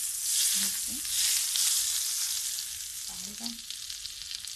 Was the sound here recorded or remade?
recorded